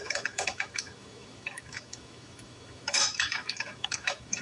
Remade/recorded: remade